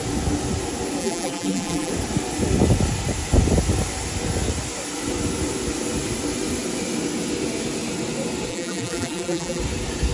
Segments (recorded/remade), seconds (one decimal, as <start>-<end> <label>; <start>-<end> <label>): 0.0-1.0 recorded; 1.0-1.9 remade; 1.9-8.5 recorded; 8.5-9.6 remade; 9.6-10.1 recorded